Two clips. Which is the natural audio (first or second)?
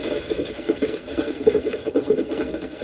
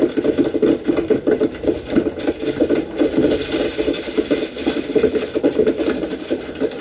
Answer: second